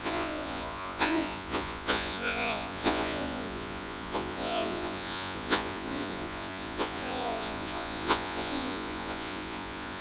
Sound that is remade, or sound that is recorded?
remade